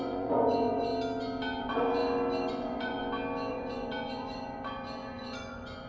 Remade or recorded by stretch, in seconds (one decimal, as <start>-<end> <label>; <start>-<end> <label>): 0.0-0.9 remade; 0.9-1.6 recorded; 1.6-2.0 remade; 2.0-2.5 recorded; 2.5-3.0 remade; 3.0-3.5 recorded; 3.5-5.9 remade